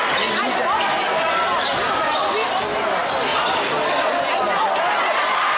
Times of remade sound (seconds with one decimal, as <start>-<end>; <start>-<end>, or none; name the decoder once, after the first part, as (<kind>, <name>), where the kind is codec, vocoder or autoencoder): none